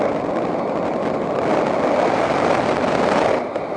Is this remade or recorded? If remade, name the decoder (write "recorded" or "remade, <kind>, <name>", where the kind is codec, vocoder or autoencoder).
recorded